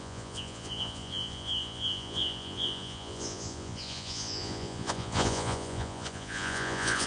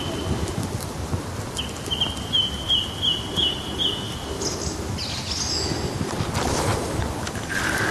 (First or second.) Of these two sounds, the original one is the second